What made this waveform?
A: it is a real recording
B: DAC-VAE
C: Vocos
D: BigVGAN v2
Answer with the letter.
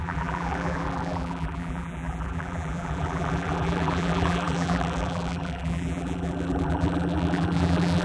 D